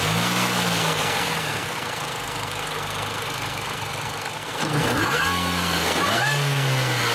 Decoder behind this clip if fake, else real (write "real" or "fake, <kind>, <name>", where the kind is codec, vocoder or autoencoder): fake, codec, SNAC